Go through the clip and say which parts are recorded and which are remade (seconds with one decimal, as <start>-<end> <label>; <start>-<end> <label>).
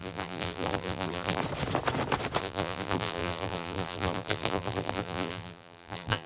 0.0-1.4 remade; 1.4-2.4 recorded; 2.4-6.3 remade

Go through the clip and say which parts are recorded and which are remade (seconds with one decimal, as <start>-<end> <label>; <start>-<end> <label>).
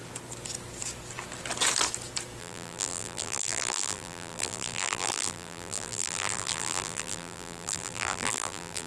0.0-2.4 recorded; 2.4-8.9 remade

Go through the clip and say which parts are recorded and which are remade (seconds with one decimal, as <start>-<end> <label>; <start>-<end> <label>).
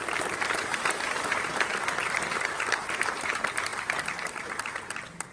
0.0-0.7 recorded; 0.7-1.4 remade; 1.4-5.3 recorded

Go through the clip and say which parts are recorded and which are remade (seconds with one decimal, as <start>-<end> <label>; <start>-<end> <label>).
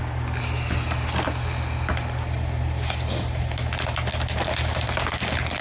0.0-5.6 recorded